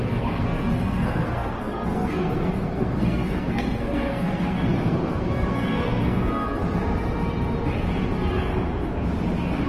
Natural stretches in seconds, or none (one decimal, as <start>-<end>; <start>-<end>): 6.6-9.7